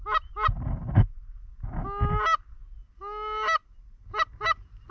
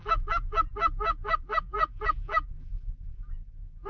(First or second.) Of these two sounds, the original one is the first